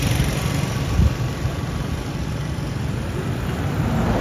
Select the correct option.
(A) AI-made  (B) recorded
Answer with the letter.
A